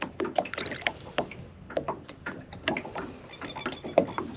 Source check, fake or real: real